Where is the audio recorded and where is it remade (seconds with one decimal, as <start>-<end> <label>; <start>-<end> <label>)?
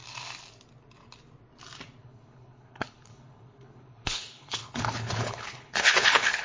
0.0-2.0 recorded; 2.0-6.4 remade